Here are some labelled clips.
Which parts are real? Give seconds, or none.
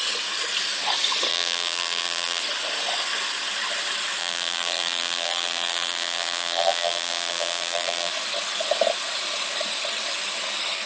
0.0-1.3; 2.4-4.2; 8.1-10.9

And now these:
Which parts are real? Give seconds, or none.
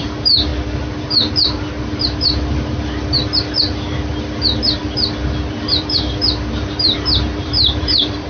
0.5-2.0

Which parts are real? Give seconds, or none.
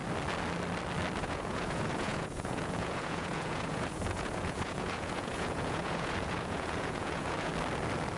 0.0-1.2; 7.5-8.2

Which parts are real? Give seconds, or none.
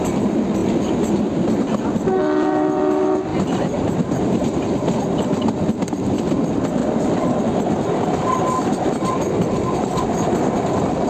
0.0-3.3; 4.6-11.1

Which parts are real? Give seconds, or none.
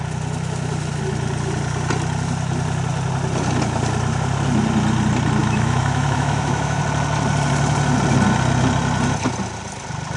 0.0-5.4; 6.8-10.2